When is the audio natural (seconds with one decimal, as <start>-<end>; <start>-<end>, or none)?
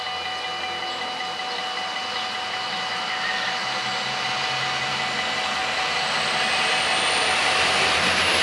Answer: 0.0-8.4